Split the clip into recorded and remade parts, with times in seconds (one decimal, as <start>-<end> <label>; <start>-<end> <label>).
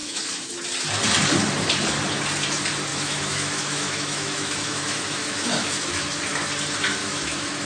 0.0-0.6 remade; 0.6-2.9 recorded; 2.9-6.2 remade; 6.2-7.0 recorded; 7.0-7.6 remade